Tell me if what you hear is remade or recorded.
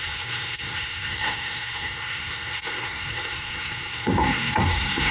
remade